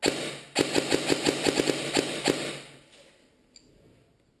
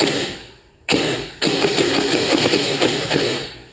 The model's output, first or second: second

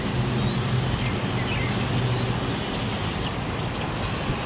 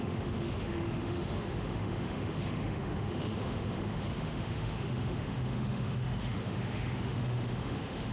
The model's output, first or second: second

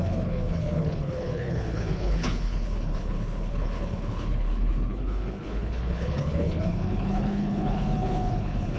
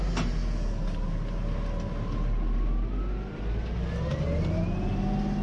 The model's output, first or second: first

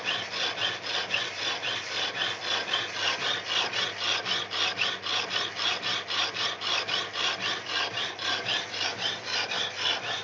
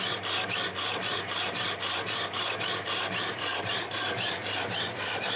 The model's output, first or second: second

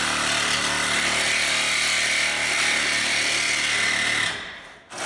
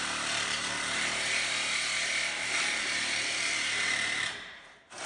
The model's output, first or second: second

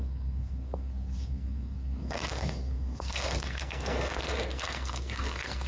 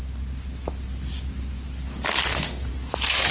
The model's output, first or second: first